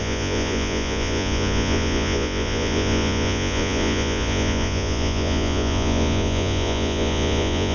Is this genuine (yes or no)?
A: no